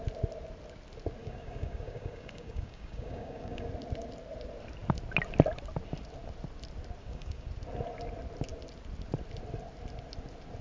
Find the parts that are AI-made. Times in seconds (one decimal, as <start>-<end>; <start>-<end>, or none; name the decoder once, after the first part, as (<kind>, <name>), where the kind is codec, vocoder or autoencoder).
1.2-3.7 (codec, DAC); 7.0-7.5